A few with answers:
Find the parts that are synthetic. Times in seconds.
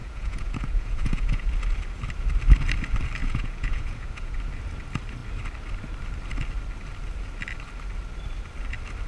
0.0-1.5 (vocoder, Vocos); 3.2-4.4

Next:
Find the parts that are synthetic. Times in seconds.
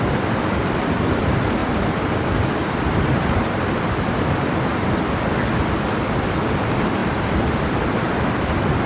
0.0-8.9 (vocoder, BigVGAN v2)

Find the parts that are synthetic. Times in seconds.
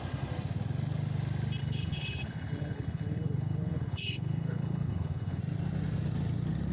1.6-5.4 (codec, HILCodec)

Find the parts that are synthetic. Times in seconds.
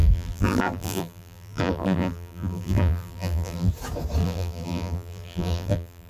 0.0-3.7 (vocoder, BigVGAN v2); 4.2-6.1